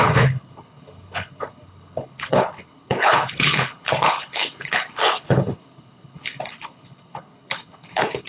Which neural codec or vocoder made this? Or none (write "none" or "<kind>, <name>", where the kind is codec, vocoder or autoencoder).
codec, HILCodec